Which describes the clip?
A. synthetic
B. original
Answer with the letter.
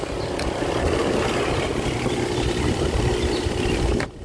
B